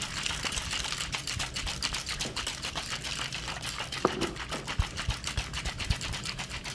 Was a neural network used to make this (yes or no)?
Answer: no